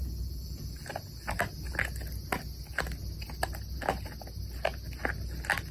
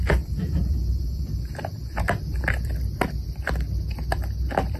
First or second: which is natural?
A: first